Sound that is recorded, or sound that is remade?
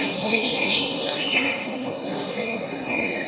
remade